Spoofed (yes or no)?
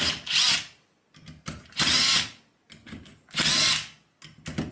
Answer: no